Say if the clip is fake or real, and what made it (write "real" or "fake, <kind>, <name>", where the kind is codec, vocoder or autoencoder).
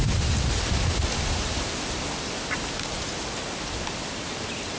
real